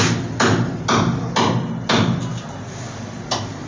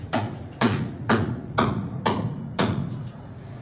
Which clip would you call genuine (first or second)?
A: first